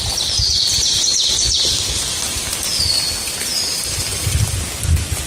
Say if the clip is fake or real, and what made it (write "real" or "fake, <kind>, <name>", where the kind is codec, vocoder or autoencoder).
real